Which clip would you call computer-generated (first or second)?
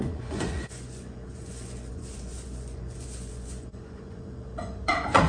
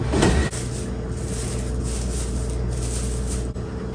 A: first